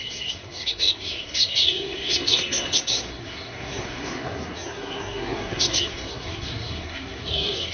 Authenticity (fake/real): fake